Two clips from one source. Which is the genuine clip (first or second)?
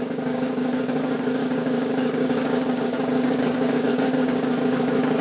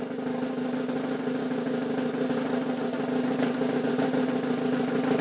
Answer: second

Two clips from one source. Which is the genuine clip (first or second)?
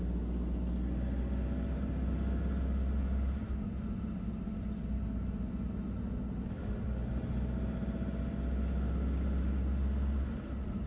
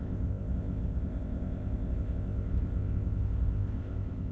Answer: first